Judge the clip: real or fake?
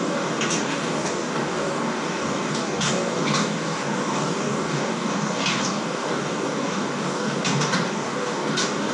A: fake